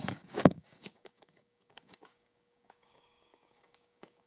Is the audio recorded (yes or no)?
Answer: no